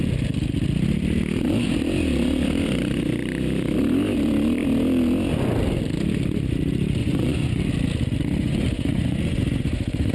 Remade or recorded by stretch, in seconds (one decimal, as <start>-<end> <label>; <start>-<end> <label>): 0.0-7.0 recorded; 7.0-7.6 remade; 7.6-8.4 recorded; 8.4-10.1 remade